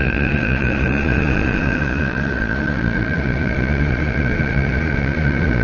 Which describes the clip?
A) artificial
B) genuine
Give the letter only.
A